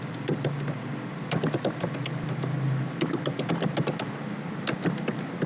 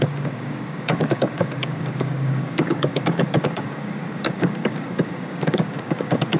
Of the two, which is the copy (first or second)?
second